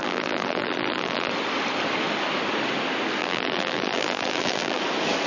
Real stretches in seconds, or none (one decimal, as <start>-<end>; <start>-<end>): 1.3-3.2; 4.8-5.3